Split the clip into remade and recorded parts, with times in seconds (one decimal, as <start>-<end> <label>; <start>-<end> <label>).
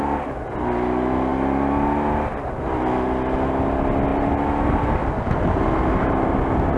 0.0-6.8 recorded